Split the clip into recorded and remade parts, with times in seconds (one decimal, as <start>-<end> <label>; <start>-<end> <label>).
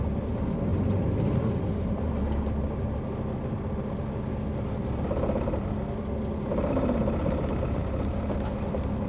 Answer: 0.0-9.1 recorded